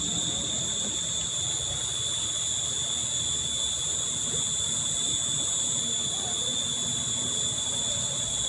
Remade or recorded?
recorded